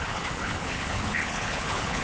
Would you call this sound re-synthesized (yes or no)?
yes